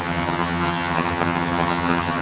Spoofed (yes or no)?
yes